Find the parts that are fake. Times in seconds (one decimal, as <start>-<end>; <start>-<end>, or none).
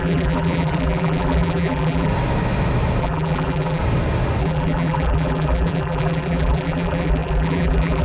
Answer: 0.0-2.1; 3.0-3.8; 4.4-8.0